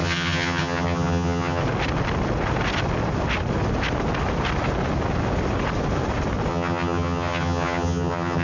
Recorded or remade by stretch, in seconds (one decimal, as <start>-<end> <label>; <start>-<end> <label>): 0.0-1.6 remade; 1.6-6.5 recorded; 6.5-8.4 remade